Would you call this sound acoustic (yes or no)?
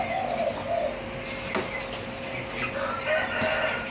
yes